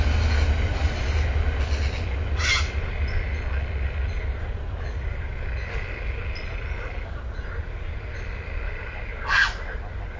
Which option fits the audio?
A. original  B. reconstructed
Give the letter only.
A